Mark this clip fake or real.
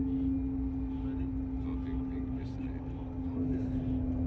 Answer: real